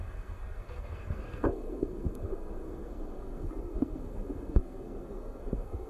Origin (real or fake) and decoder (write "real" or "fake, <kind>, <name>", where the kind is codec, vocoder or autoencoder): fake, codec, SNAC